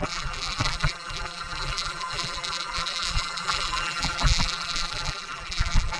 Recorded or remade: remade